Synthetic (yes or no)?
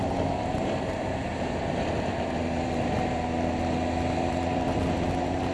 yes